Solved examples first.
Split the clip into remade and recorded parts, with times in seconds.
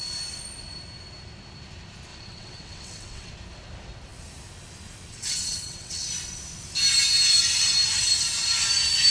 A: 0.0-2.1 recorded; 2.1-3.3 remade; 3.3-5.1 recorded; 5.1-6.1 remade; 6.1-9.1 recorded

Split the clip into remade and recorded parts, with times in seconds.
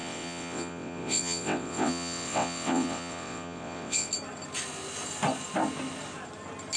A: 0.0-4.1 remade; 4.1-6.8 recorded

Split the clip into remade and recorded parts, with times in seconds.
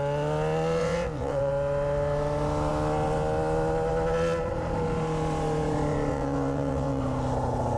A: 0.0-0.8 recorded; 0.8-1.5 remade; 1.5-6.1 recorded; 6.1-7.0 remade; 7.0-7.8 recorded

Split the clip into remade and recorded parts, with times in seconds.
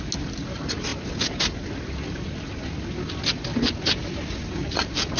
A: 0.0-5.2 recorded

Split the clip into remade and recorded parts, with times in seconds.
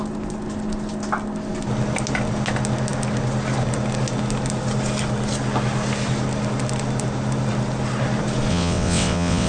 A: 0.0-8.5 recorded; 8.5-9.5 remade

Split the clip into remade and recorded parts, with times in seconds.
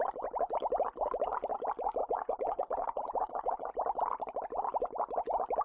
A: 0.0-2.0 recorded; 2.0-3.7 remade; 3.7-5.6 recorded